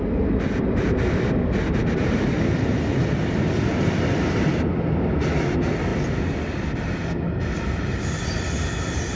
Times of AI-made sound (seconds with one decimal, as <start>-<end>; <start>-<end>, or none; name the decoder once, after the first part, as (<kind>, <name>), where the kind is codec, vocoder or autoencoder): none